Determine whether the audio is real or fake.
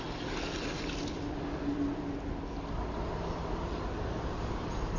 real